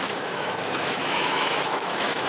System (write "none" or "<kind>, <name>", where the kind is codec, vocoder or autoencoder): autoencoder, DAC-VAE